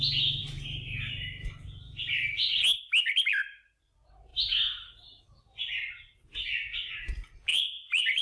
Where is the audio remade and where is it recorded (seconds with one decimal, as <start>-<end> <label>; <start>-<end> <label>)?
0.0-0.4 recorded; 0.4-1.1 remade; 1.1-4.3 recorded; 4.3-5.2 remade; 5.2-7.5 recorded; 7.5-8.2 remade